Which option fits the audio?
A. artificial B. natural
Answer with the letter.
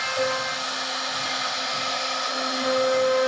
B